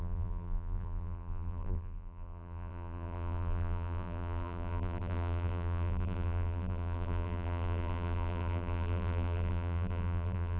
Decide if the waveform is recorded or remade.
remade